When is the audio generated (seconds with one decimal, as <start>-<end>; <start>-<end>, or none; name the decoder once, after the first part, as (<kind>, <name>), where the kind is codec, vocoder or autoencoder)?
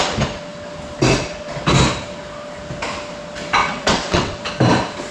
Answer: 3.6-4.4 (vocoder, WaveNeXt)